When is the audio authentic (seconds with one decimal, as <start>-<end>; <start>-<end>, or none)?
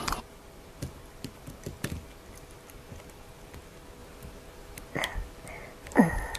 0.0-6.4